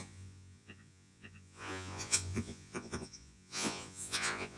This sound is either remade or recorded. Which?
remade